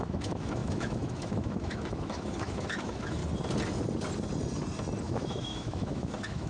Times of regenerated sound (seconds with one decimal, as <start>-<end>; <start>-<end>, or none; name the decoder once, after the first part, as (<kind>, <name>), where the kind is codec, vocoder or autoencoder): 0.0-3.2 (autoencoder, DAC-VAE); 5.0-6.5